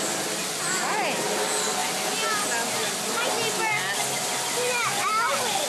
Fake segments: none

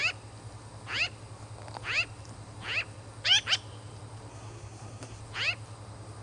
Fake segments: 4.3-5.2 (codec, SNAC)

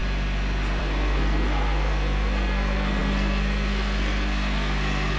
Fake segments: 0.8-5.2 (codec, SNAC)

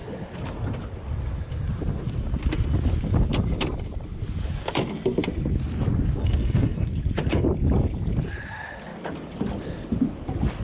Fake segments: 6.2-6.9 (codec, SNAC)

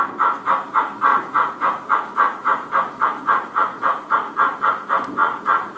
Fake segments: 1.1-4.6 (vocoder, Vocos); 5.2-5.8